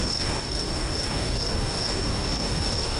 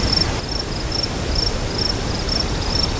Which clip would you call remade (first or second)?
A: first